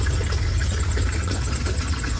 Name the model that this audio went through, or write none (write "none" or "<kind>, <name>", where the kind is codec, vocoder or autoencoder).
vocoder, Vocos